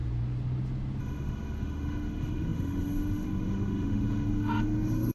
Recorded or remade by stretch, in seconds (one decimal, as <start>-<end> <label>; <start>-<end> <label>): 0.0-1.0 recorded; 1.0-5.1 remade